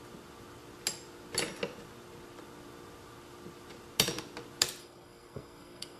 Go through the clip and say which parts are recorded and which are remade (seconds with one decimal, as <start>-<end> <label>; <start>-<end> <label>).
0.0-4.8 recorded; 4.8-6.0 remade